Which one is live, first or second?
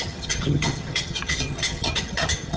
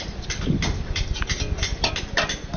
second